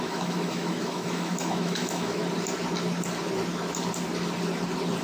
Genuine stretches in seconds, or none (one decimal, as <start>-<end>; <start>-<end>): 2.2-5.0